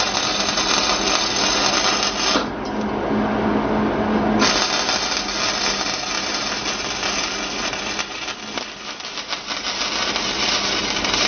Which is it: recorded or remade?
recorded